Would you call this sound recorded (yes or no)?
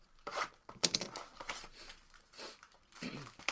yes